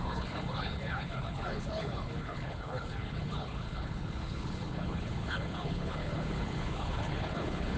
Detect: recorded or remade remade